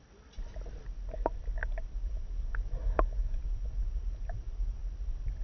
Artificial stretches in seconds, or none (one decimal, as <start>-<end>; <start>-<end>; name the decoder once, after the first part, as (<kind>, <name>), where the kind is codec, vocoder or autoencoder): 1.6-4.8 (vocoder, BigVGAN v2)